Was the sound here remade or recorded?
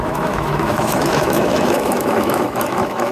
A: remade